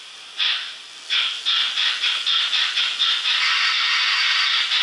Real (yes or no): yes